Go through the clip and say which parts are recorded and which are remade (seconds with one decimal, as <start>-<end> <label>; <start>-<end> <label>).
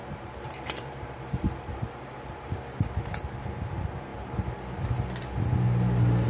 0.0-2.6 remade; 2.6-6.3 recorded